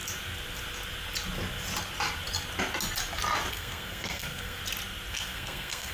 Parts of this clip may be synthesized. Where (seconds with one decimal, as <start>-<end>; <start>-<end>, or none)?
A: 3.5-4.6; 5.1-5.9